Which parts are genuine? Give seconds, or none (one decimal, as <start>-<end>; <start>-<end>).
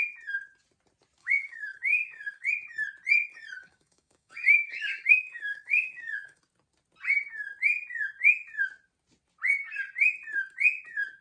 0.0-1.2; 2.5-3.3; 6.4-11.2